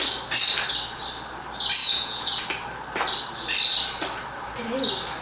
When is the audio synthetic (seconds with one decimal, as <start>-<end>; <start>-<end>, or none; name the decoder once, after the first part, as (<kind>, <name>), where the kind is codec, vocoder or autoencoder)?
1.8-2.4 (vocoder, Vocos)